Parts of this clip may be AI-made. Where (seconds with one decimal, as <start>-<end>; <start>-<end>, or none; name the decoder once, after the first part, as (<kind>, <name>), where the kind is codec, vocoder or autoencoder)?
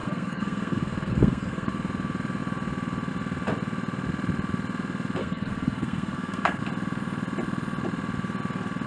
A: 0.0-1.7 (codec, SNAC); 5.2-6.6